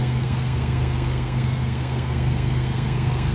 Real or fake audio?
fake